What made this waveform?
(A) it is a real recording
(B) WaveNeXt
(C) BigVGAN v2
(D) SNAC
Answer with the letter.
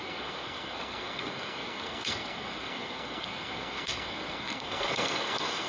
D